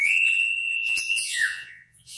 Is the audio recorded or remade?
remade